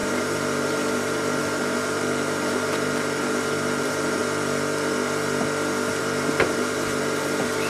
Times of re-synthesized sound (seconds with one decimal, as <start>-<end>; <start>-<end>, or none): 0.0-4.2; 6.0-7.7

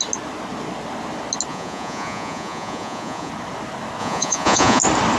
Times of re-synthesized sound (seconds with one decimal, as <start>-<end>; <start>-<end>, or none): 1.5-3.3; 4.0-4.8

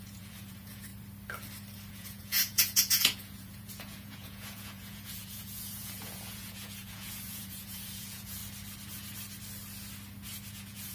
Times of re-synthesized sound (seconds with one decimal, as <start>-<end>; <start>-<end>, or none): 0.0-0.9; 1.9-8.4; 10.5-10.9

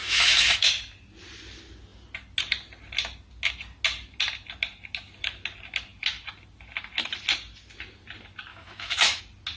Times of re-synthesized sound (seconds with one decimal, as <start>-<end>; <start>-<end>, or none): 0.0-0.7; 8.5-9.2

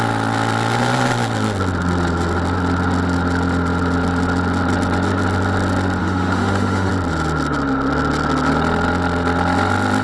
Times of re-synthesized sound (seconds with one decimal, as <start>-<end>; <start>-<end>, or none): 6.0-6.9

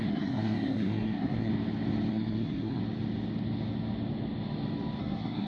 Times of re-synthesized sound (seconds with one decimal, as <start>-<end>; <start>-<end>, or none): 0.0-1.5; 2.1-2.8; 5.0-5.5

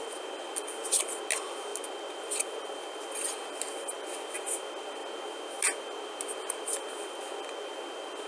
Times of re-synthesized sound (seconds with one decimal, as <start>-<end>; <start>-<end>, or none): none

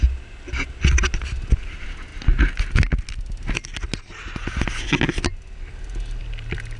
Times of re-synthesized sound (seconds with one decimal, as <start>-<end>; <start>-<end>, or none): none